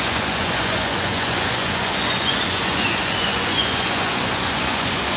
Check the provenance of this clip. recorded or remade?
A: remade